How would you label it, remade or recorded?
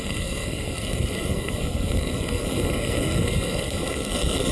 remade